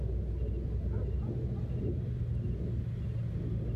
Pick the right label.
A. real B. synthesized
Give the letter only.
A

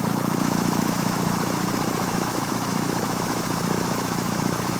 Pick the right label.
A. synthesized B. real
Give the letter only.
A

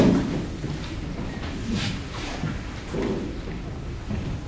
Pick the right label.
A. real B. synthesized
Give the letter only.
A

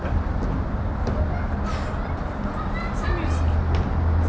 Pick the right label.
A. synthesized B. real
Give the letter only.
B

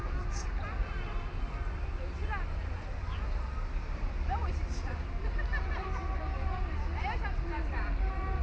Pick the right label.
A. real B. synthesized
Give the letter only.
A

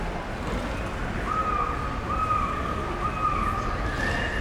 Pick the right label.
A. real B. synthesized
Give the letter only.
A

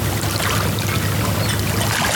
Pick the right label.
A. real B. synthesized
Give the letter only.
A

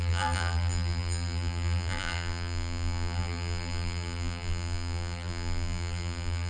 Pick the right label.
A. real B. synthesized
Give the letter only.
B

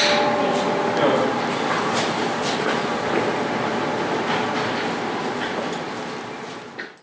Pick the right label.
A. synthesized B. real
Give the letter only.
B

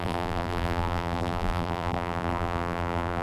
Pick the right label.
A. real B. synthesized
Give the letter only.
B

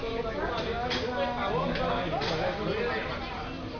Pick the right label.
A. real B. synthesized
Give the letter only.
A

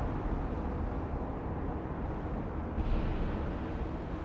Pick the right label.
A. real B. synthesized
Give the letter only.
A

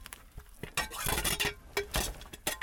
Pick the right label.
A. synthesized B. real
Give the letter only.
B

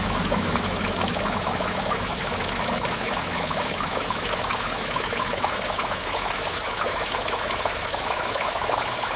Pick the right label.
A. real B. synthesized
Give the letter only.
B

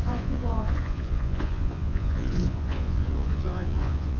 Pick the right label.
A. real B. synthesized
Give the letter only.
B